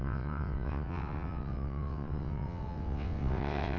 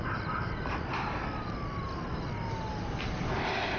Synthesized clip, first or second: first